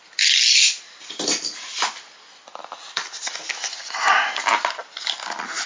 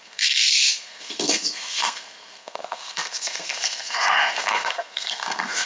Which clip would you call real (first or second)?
first